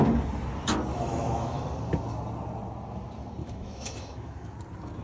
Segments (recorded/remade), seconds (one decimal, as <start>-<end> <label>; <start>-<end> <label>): 0.0-0.9 recorded; 0.9-1.6 remade; 1.6-3.4 recorded; 3.4-4.5 remade; 4.5-5.0 recorded